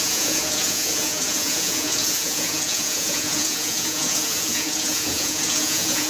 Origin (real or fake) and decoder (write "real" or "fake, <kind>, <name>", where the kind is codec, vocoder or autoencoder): fake, vocoder, Vocos